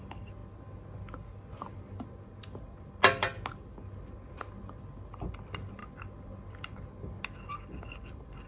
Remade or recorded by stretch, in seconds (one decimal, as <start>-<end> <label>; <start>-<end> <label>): 0.0-8.5 recorded